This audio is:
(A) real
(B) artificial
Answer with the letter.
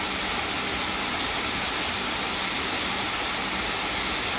A